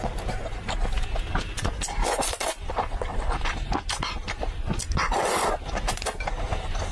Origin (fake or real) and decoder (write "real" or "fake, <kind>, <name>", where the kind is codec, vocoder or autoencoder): real